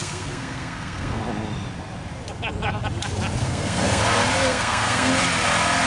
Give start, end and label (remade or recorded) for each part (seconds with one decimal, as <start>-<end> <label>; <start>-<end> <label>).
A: 0.0-1.2 remade; 1.2-3.4 recorded; 3.4-4.0 remade; 4.0-4.5 recorded; 4.5-5.1 remade; 5.1-5.9 recorded